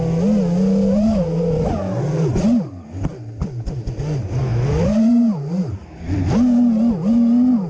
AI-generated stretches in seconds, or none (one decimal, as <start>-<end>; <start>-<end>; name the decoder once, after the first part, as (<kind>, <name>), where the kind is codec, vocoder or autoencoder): none